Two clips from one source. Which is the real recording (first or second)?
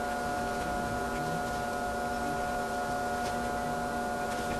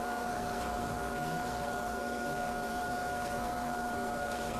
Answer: first